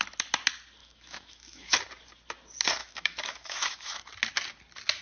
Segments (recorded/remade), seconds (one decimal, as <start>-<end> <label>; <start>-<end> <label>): 0.0-0.8 recorded; 0.8-1.7 remade; 1.7-2.8 recorded; 2.8-4.0 remade; 4.0-5.0 recorded